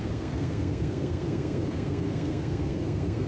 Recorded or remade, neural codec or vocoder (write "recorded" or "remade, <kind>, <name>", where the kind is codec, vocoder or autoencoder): remade, codec, SNAC